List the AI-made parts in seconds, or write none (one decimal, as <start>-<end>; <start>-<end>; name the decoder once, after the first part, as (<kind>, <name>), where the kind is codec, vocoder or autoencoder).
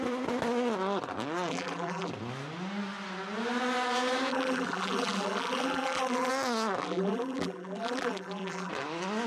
1.5-2.1 (vocoder, BigVGAN v2); 4.3-6.3; 6.8-8.7